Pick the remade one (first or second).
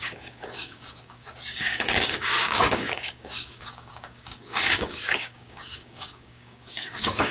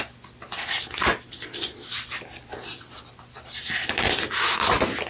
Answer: first